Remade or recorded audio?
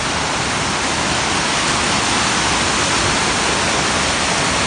recorded